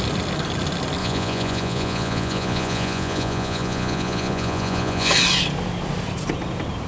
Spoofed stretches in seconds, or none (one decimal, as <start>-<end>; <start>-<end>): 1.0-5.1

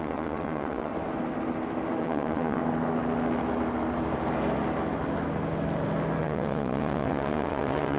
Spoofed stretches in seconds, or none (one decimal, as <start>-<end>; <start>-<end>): 0.0-0.9; 2.0-2.6; 6.2-8.0

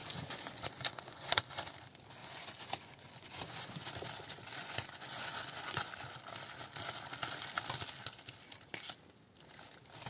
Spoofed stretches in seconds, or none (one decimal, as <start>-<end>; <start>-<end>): 0.0-1.4; 2.2-3.9; 4.6-5.9

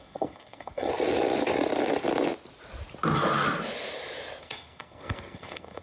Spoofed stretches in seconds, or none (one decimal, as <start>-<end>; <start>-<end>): 0.0-0.9; 4.4-5.8

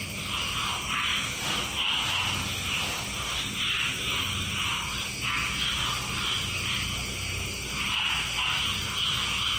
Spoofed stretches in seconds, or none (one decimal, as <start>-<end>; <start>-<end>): none

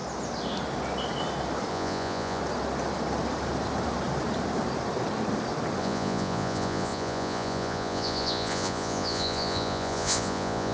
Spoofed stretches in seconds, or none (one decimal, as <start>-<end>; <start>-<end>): 1.7-2.4; 5.8-10.7